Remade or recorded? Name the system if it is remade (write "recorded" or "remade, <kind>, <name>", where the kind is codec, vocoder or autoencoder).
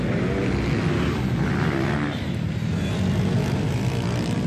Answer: recorded